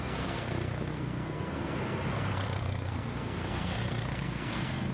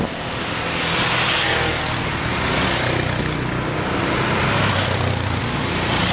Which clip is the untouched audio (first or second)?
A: second